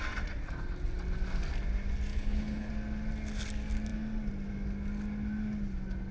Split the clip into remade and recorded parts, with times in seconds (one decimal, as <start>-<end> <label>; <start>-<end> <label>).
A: 0.0-2.1 recorded; 2.1-2.7 remade; 2.7-6.1 recorded